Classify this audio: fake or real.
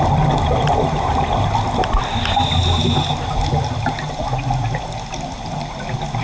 real